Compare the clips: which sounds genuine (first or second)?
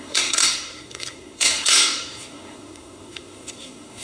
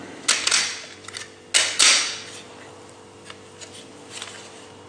second